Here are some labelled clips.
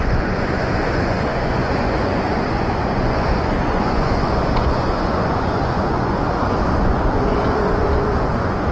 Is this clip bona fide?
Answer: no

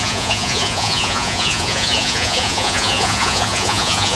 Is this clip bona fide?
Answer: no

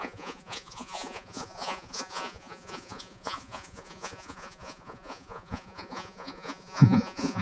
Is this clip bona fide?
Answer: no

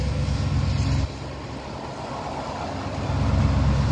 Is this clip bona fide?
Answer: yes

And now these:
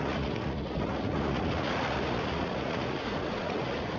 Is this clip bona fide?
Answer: no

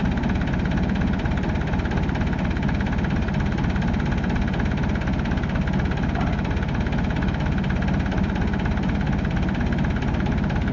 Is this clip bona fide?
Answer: yes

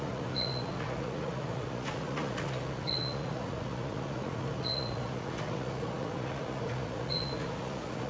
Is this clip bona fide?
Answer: no